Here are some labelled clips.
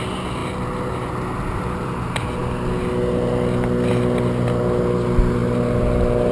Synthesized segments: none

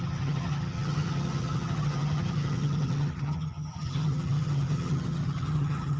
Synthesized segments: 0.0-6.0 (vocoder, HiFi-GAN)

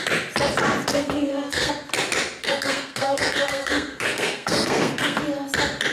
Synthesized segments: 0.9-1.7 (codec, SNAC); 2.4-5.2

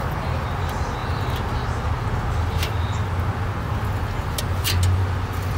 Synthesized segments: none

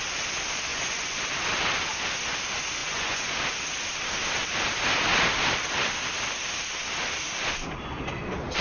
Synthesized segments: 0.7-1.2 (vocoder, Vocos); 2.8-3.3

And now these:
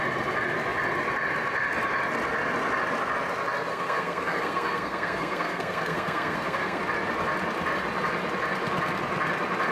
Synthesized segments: 3.7-6.8 (codec, SNAC)

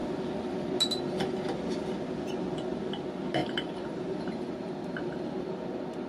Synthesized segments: 3.4-4.9 (vocoder, BigVGAN v2)

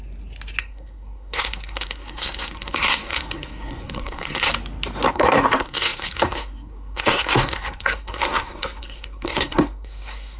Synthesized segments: 0.6-4.5 (codec, SNAC); 5.1-10.4